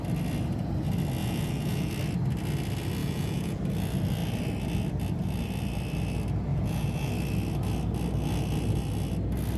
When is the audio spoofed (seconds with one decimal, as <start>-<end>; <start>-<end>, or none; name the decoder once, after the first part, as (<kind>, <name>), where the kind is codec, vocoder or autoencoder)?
1.2-1.9 (vocoder, Vocos); 3.0-3.6; 6.5-7.1